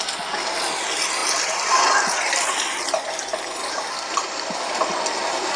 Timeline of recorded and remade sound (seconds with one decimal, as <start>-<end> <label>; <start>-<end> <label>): 0.0-5.6 recorded

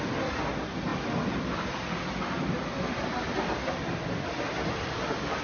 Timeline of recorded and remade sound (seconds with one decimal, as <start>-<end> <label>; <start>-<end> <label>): 0.0-5.4 recorded

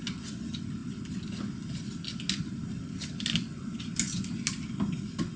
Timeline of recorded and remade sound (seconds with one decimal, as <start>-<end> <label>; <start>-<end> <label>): 0.0-5.4 recorded

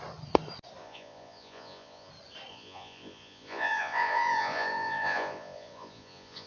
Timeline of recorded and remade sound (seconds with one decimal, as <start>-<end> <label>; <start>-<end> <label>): 0.0-0.8 recorded; 0.8-2.1 remade; 2.1-2.5 recorded; 2.5-6.5 remade